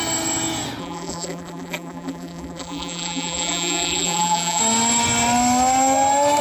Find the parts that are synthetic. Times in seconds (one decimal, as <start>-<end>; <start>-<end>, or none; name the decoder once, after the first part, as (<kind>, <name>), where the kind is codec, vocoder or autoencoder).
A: 0.8-4.6 (vocoder, BigVGAN v2)